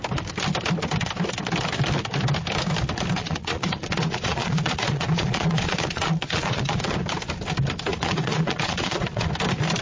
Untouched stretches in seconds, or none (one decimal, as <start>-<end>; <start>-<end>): 0.0-3.2; 6.9-7.9; 9.3-9.8